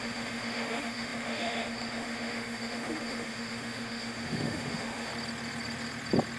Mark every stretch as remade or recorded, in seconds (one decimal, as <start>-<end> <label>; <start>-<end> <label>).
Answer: 0.0-5.1 remade; 5.1-6.4 recorded